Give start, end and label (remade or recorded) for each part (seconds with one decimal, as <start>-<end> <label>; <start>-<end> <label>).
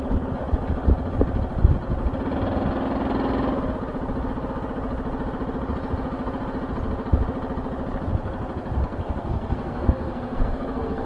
0.0-8.8 recorded; 8.8-11.1 remade